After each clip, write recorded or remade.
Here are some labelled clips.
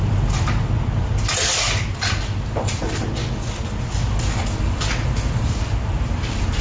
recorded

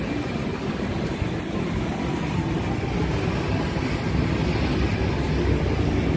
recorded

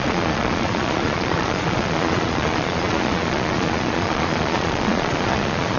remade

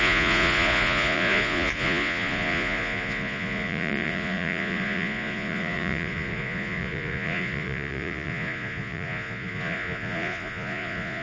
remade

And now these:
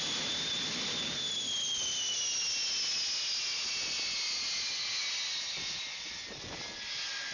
recorded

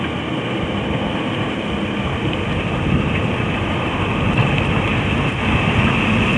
recorded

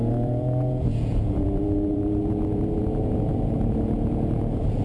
remade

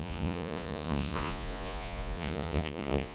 remade